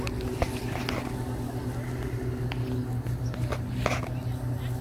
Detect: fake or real real